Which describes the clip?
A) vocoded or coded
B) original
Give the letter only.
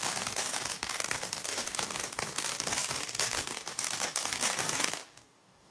A